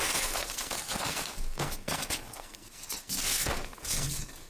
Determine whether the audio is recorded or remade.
remade